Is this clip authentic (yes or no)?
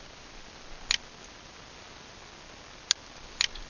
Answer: yes